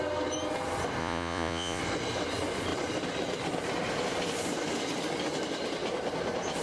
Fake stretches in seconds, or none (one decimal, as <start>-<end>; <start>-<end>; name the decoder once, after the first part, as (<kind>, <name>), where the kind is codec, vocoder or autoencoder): 1.0-1.8 (vocoder, Vocos)